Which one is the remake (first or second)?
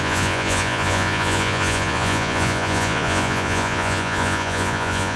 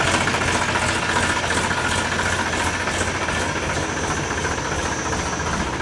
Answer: first